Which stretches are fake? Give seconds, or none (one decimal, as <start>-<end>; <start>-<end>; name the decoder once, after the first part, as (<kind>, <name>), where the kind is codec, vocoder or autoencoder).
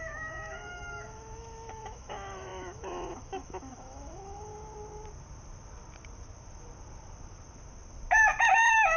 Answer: 0.0-4.5 (autoencoder, DAC-VAE); 8.6-9.0